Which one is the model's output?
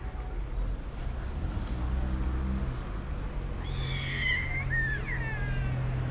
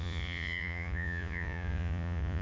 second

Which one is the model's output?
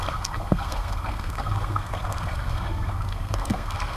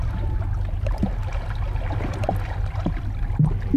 first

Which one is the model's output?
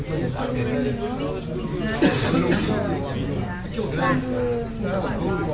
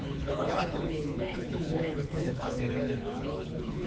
second